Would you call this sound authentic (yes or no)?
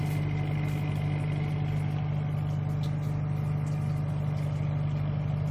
yes